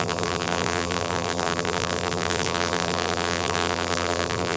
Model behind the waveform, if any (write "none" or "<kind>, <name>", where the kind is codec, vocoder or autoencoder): vocoder, BigVGAN v2